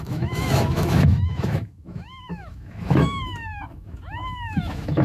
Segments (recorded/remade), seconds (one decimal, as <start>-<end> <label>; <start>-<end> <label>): 0.0-5.0 remade